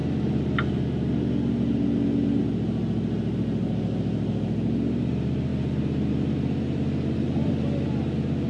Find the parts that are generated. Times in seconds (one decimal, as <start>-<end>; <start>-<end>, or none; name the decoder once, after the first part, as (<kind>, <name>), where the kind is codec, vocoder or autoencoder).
none